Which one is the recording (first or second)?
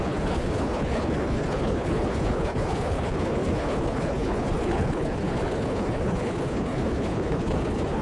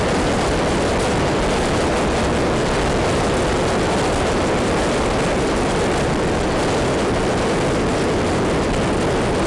second